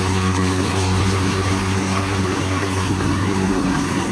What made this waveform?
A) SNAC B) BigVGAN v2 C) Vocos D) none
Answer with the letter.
A